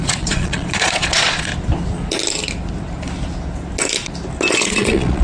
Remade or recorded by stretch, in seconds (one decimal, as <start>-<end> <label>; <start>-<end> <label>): 0.0-1.5 remade; 1.5-4.6 recorded; 4.6-5.2 remade